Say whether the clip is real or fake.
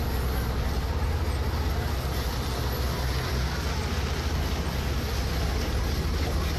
real